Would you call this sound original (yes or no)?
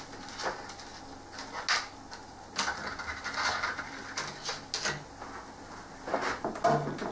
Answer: yes